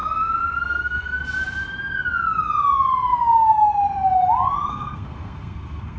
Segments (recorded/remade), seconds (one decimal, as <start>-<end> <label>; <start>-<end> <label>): 0.0-0.6 recorded; 0.6-1.2 remade; 1.2-4.7 recorded; 4.7-6.0 remade